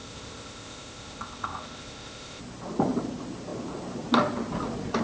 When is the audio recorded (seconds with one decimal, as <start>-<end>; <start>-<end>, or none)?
2.4-5.0